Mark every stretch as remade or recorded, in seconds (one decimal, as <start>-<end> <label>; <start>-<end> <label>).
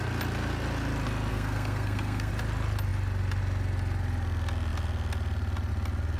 0.0-1.3 recorded; 1.3-2.3 remade; 2.3-6.2 recorded